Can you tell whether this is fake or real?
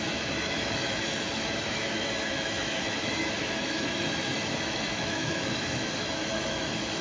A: fake